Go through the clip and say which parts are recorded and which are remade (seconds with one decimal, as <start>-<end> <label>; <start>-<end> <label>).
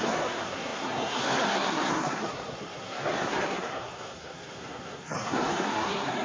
0.0-6.2 remade